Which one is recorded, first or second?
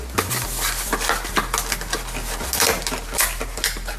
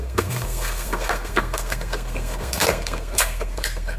first